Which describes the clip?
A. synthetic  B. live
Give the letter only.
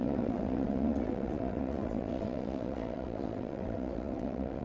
A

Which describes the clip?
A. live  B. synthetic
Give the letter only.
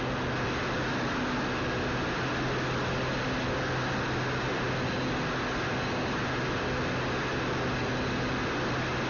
A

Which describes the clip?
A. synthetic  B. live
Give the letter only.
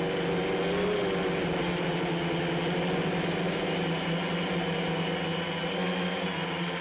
B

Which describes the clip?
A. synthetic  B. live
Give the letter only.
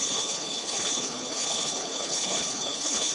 A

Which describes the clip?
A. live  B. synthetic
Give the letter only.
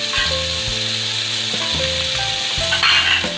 A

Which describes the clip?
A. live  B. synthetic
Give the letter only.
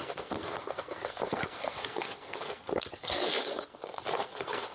B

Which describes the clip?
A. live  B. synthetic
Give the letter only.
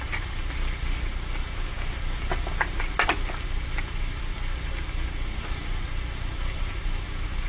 A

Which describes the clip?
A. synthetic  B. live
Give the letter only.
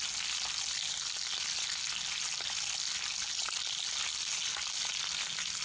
B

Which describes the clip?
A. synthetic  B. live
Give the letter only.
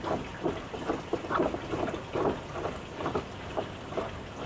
B